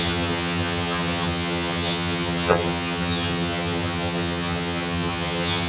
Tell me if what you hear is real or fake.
fake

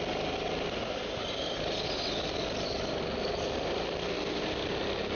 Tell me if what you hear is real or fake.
real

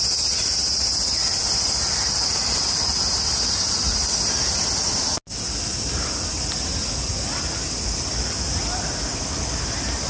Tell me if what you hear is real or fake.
real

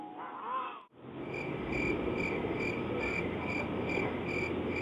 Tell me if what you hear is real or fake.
real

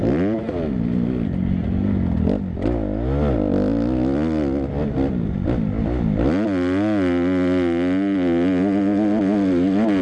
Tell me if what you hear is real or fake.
real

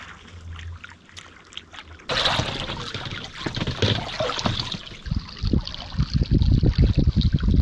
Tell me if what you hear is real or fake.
real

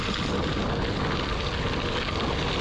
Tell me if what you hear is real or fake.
real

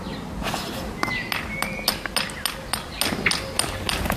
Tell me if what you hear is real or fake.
real